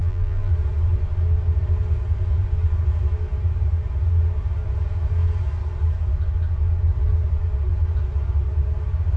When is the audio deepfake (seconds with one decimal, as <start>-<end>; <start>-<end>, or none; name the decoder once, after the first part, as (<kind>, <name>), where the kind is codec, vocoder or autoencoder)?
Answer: 0.0-0.5 (vocoder, BigVGAN v2)